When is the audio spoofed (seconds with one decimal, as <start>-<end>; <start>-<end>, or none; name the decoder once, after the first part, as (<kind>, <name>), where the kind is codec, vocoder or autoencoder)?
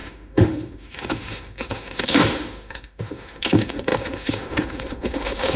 0.0-5.6 (autoencoder, DAC-VAE)